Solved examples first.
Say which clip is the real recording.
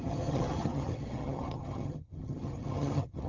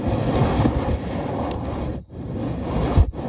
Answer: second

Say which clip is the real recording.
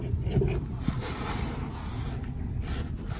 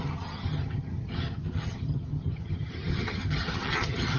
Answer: first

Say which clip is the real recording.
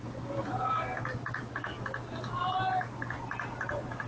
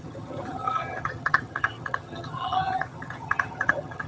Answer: first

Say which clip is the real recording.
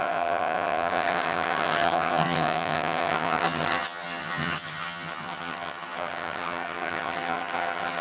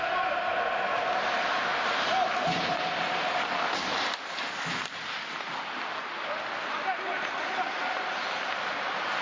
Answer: second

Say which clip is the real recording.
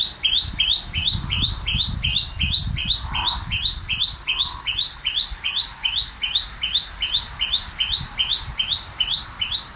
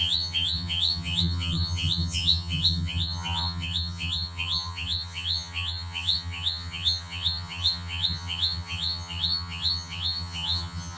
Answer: first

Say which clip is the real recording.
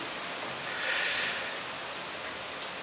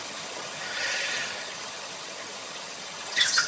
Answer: first